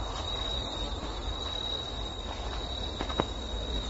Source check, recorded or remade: recorded